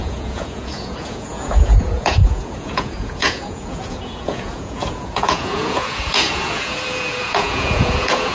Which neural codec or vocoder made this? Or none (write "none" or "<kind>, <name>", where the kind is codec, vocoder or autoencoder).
vocoder, Vocos